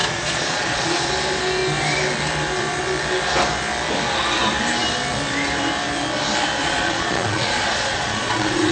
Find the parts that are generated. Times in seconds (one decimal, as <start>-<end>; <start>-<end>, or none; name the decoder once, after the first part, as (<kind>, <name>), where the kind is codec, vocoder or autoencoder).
0.0-1.1 (vocoder, Vocos); 6.6-8.7